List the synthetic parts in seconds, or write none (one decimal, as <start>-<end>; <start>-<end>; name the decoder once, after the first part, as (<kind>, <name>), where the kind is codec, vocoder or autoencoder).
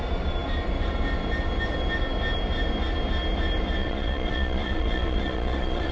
3.8-5.9 (vocoder, Vocos)